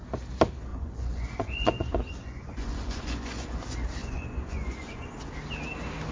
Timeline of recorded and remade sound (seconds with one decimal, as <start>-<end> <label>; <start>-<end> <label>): 0.0-0.7 recorded; 0.7-3.6 remade; 3.6-4.0 recorded; 4.0-5.1 remade; 5.1-6.1 recorded